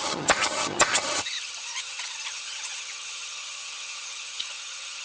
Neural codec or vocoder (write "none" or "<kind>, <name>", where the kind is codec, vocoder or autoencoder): vocoder, HiFi-GAN